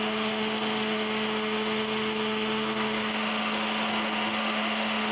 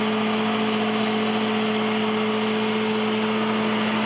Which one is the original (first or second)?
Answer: second